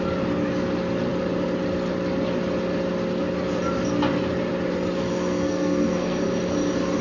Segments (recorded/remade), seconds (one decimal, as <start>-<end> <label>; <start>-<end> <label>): 0.0-5.1 recorded; 5.1-6.2 remade; 6.2-7.0 recorded